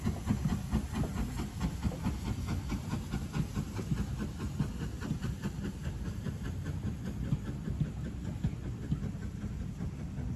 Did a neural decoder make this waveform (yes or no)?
no